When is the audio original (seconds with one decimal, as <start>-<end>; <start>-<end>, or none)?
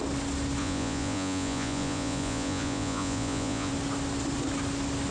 0.0-0.6; 3.7-5.1